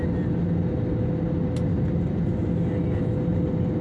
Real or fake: real